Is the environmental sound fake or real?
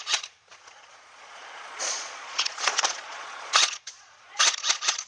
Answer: fake